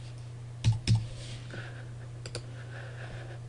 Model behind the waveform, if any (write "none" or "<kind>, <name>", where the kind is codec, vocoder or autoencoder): none